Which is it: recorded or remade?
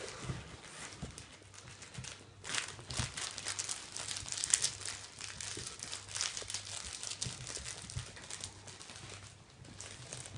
recorded